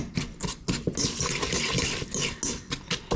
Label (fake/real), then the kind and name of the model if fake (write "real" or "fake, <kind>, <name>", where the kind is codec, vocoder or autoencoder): real